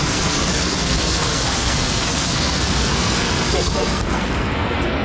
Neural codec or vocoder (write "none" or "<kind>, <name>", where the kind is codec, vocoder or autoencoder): codec, SNAC